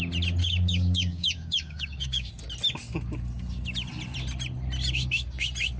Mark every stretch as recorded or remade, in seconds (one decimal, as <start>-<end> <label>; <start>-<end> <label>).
0.0-0.4 recorded; 0.4-2.3 remade; 2.3-5.8 recorded